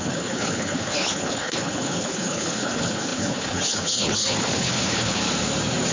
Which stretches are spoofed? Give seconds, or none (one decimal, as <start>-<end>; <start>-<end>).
0.0-5.2